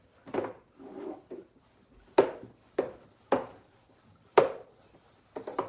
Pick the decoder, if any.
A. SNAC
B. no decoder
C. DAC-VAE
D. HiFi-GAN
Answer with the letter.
B